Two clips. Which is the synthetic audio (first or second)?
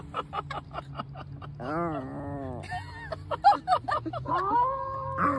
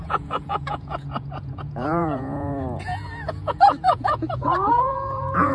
second